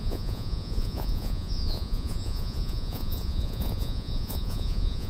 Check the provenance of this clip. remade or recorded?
remade